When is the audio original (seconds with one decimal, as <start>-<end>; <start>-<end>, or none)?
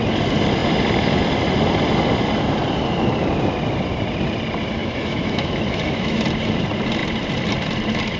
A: 0.0-4.8; 6.2-8.2